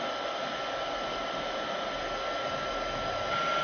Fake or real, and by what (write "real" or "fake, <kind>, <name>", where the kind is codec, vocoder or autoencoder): real